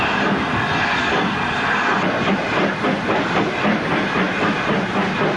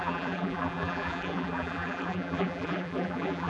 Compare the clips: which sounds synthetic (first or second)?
second